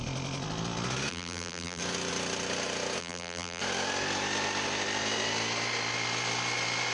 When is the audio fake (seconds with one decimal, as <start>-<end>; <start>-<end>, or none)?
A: 1.1-1.8; 3.0-3.6